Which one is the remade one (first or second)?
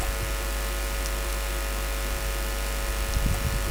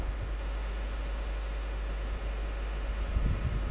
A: second